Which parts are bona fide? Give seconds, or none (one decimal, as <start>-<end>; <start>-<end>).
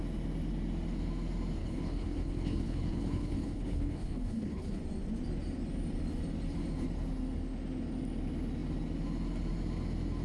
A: 0.0-1.6; 4.8-10.2